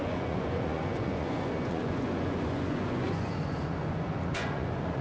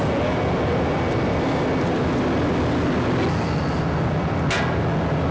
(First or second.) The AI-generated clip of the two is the first